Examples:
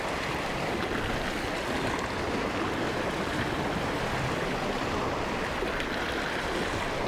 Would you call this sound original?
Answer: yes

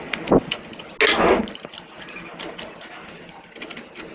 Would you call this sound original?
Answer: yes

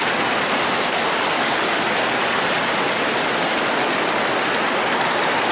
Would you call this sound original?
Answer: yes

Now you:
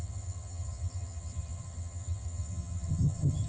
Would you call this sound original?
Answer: no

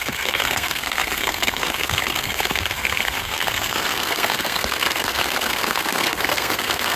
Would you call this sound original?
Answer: no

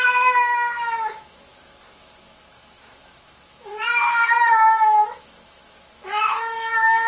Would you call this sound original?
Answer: no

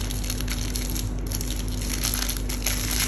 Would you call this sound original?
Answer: yes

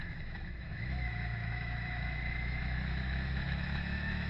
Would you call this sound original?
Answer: no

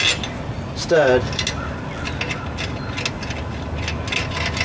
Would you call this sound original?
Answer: yes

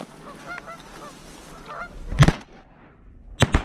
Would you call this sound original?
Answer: yes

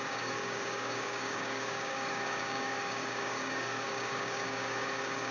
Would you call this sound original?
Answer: no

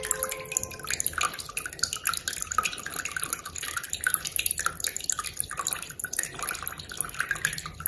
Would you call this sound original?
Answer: yes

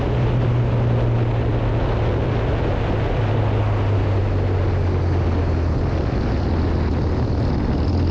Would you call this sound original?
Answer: yes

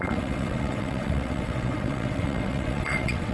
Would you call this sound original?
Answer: no